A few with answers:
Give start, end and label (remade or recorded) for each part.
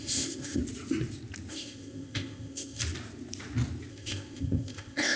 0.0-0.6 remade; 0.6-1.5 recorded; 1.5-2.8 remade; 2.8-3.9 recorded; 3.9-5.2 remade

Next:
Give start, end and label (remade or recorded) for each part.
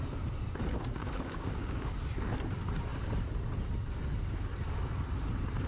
0.0-0.7 recorded; 0.7-2.0 remade; 2.0-5.7 recorded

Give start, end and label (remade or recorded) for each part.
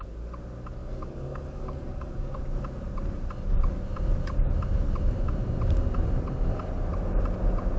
0.0-0.8 recorded; 0.8-2.4 remade; 2.4-7.8 recorded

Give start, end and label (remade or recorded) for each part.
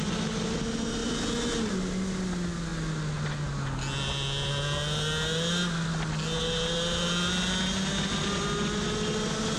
0.0-9.6 recorded